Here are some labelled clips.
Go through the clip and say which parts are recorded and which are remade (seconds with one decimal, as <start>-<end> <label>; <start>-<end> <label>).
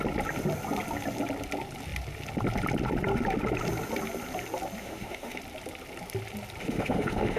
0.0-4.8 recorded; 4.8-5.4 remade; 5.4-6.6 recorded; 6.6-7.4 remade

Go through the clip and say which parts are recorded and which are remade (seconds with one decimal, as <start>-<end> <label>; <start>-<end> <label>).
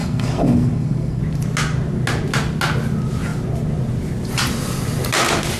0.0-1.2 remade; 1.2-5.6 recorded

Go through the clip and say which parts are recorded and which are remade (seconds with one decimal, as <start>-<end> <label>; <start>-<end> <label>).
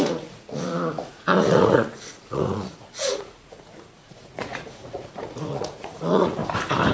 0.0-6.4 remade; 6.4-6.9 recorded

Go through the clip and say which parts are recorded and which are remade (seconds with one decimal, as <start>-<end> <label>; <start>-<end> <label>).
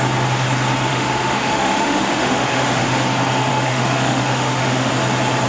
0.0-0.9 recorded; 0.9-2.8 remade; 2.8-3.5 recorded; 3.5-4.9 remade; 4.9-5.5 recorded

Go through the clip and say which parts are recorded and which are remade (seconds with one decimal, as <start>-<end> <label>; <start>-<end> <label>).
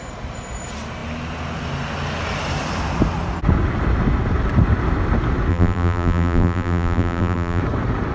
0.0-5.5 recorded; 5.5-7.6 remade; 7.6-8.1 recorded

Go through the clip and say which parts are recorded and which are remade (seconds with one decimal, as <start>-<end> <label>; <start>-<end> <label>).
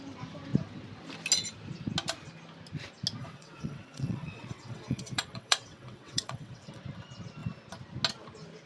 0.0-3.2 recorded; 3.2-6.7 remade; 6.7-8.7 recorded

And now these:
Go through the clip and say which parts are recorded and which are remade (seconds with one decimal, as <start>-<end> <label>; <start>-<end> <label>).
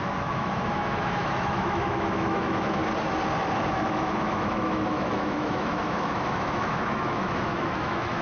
0.0-2.8 remade; 2.8-3.7 recorded; 3.7-8.2 remade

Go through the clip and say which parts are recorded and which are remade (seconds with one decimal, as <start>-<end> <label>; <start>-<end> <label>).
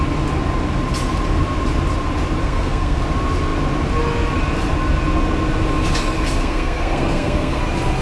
0.0-2.4 recorded; 2.4-3.0 remade; 3.0-6.4 recorded; 6.4-7.6 remade; 7.6-8.0 recorded